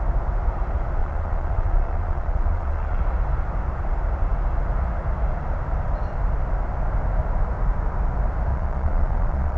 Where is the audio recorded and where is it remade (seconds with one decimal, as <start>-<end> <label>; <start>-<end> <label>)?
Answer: 0.0-1.0 recorded; 1.0-3.0 remade; 3.0-8.5 recorded; 8.5-9.6 remade

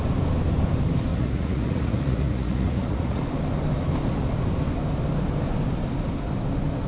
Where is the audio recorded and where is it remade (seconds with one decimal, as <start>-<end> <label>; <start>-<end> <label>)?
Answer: 0.0-1.1 recorded; 1.1-3.2 remade; 3.2-6.9 recorded

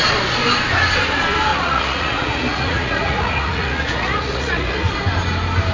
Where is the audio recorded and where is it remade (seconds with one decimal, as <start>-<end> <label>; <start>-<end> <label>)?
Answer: 0.0-1.5 recorded; 1.5-4.9 remade; 4.9-5.7 recorded

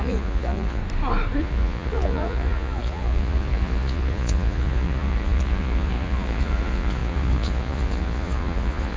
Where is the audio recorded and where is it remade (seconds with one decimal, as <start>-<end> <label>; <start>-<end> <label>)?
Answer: 0.0-0.8 remade; 0.8-1.4 recorded; 1.4-9.0 remade

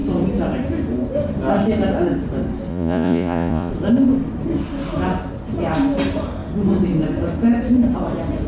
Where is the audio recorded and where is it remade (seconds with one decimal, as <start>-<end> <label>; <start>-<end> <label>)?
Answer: 0.0-2.7 recorded; 2.7-3.7 remade; 3.7-8.5 recorded

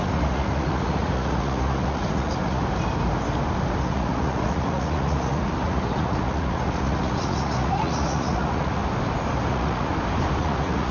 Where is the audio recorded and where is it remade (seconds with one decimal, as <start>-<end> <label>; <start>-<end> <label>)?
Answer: 0.0-2.6 remade; 2.6-3.8 recorded; 3.8-8.8 remade; 8.8-9.5 recorded; 9.5-9.9 remade; 9.9-10.4 recorded; 10.4-10.9 remade

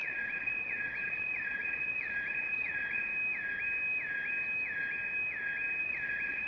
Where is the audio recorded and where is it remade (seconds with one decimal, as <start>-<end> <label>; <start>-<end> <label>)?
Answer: 0.0-3.1 remade; 3.1-5.8 recorded; 5.8-6.5 remade

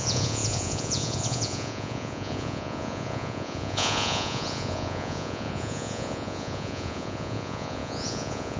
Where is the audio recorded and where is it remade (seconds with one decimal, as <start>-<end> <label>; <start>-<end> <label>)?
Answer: 0.0-8.6 remade